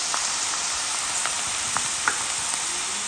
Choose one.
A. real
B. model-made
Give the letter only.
A